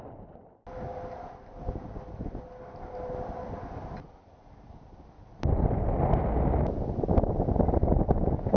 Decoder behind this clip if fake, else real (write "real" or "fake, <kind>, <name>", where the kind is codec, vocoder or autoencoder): real